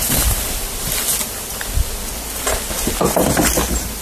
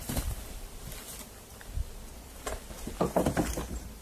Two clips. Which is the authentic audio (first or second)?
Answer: first